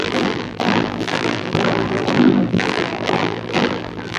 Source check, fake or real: fake